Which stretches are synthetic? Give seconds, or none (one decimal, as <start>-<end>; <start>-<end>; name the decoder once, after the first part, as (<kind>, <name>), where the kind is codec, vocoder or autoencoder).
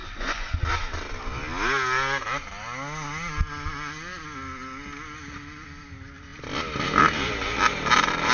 0.0-0.5 (vocoder, Vocos)